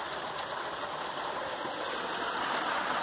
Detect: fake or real real